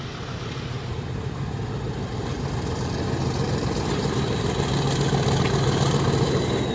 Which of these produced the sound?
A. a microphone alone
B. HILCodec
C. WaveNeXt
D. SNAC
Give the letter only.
A